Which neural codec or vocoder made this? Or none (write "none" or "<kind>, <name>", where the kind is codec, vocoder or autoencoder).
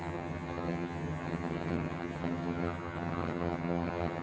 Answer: vocoder, HiFi-GAN